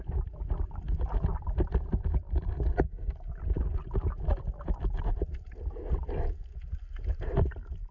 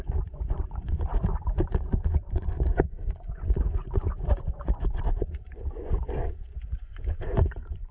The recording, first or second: first